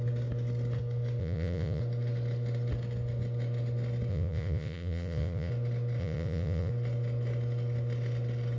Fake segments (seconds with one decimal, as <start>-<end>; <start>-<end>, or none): 1.2-1.8; 4.1-5.5; 6.0-6.7